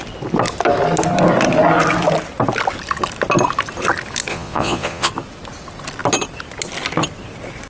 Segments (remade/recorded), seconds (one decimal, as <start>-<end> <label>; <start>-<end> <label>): 0.0-4.3 recorded; 4.3-5.1 remade; 5.1-7.7 recorded